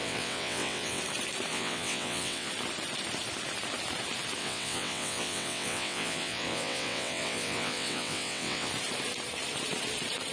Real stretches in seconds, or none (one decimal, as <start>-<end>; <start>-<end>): 1.0-1.5; 2.5-4.4; 8.7-10.3